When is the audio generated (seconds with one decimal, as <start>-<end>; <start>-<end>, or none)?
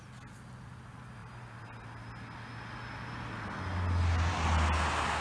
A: none